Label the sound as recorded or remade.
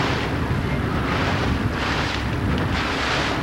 recorded